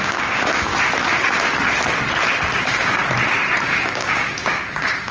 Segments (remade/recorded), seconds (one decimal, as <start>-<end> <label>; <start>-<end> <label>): 0.0-0.7 remade; 0.7-2.5 recorded; 2.5-3.0 remade; 3.0-3.6 recorded; 3.6-5.1 remade